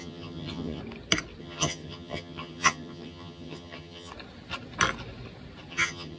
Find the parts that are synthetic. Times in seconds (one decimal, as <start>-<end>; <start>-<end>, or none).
0.0-0.8; 1.4-4.1; 5.7-6.2